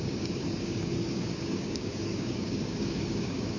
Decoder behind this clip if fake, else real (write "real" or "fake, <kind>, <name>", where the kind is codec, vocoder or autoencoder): fake, codec, DAC